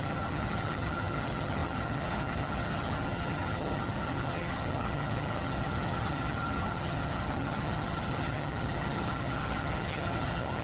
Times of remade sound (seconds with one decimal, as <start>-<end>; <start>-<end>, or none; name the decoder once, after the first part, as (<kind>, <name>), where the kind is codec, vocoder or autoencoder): 0.0-10.6 (vocoder, HiFi-GAN)